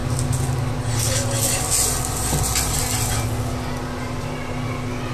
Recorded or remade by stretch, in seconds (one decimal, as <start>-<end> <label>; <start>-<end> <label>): 0.0-5.1 recorded